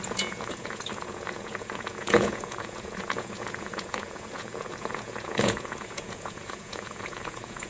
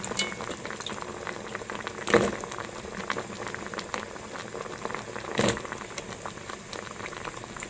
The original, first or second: second